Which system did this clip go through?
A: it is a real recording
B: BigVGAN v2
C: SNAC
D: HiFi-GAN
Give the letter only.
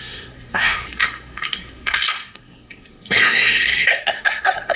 C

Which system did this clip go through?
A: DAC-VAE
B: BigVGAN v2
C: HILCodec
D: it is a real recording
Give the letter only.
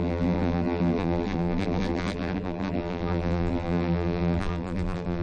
B